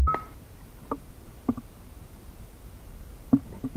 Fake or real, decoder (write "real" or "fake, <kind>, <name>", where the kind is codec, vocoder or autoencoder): fake, vocoder, BigVGAN v2